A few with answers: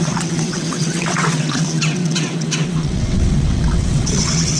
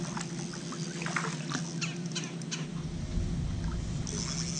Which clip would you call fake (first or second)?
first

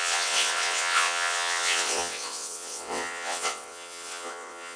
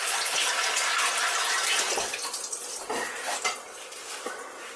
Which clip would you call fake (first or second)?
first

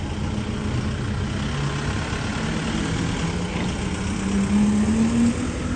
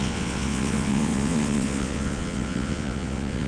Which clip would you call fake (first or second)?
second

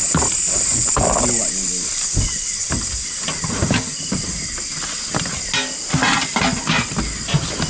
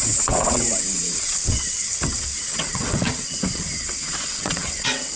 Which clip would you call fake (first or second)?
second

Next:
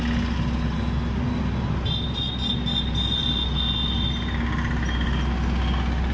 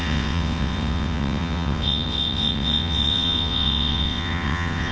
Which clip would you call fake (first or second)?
second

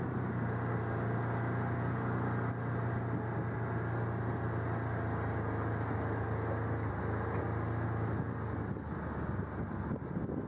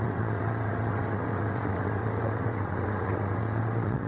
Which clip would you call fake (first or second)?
second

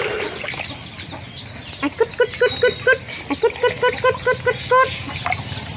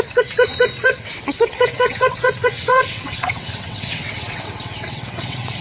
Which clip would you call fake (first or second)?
second